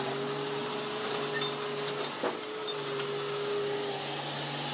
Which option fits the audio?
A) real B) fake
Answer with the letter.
A